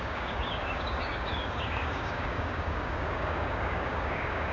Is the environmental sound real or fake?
fake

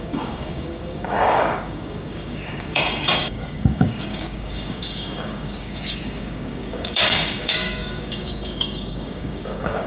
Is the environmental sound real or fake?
fake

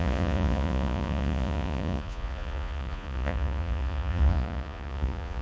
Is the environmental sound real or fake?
fake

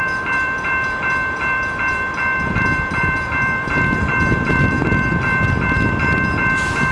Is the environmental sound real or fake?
fake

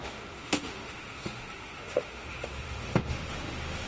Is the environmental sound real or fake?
fake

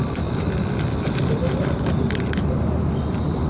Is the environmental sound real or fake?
real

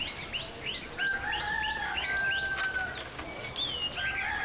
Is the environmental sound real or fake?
real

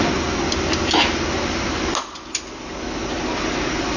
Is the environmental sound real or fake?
real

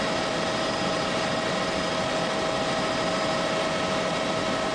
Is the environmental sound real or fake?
real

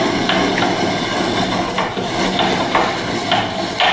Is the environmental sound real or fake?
real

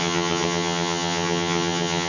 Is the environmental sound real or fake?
fake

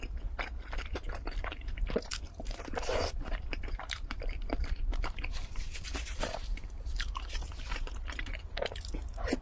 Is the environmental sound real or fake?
fake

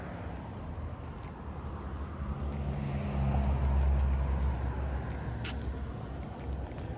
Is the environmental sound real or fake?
real